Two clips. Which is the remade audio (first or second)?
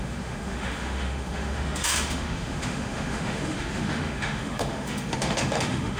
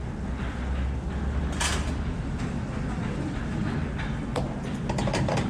first